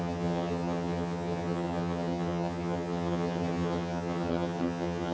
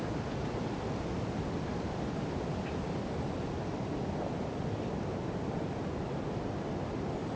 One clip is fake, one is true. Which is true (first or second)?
second